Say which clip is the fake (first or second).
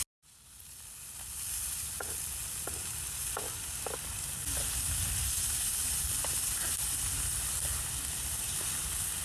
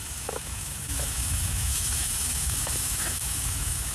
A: second